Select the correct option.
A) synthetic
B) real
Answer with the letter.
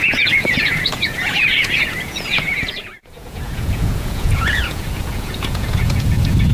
A